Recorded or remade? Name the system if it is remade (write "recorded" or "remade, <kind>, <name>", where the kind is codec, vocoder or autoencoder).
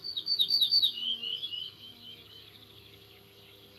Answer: remade, codec, DAC